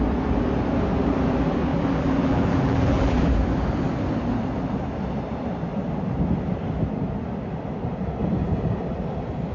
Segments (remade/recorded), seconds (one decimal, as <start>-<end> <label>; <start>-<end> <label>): 0.0-1.7 recorded; 1.7-3.3 remade; 3.3-9.5 recorded